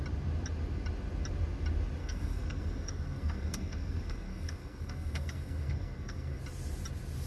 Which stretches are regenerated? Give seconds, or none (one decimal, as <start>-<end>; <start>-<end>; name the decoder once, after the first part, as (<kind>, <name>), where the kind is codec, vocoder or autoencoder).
2.0-6.4 (codec, SNAC)